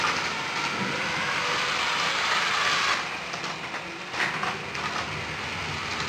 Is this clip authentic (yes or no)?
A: yes